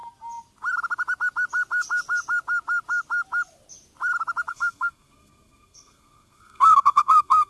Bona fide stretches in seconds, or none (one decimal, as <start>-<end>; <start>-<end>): 0.0-4.5